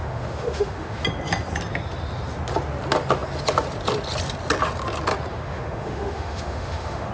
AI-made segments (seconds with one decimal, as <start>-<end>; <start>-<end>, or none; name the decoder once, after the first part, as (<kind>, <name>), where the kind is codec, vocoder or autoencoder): 0.0-1.0 (autoencoder, DAC-VAE); 5.3-7.1

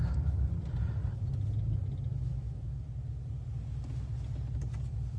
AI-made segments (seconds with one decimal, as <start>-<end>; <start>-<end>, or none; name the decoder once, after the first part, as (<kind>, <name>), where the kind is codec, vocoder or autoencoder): 2.1-2.9 (autoencoder, DAC-VAE)

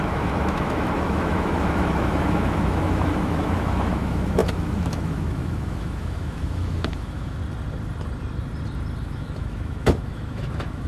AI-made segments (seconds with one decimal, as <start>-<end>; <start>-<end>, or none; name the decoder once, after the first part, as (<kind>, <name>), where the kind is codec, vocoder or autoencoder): 0.0-7.4 (autoencoder, DAC-VAE); 9.0-10.9

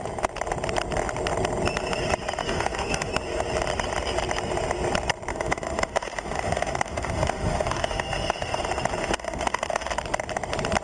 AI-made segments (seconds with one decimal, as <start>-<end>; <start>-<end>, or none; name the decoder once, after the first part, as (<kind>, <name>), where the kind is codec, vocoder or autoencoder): 2.4-3.1 (autoencoder, DAC-VAE); 5.3-8.6; 9.0-9.9

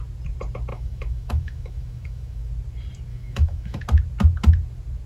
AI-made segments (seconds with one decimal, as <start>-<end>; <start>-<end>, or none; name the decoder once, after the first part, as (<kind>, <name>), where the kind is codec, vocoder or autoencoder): 0.7-2.5 (autoencoder, DAC-VAE); 3.1-3.8

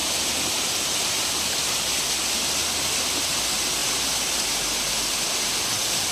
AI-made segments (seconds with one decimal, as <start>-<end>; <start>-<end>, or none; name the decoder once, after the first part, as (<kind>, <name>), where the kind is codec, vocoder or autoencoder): none